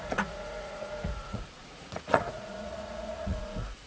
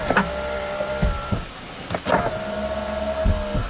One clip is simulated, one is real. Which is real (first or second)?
second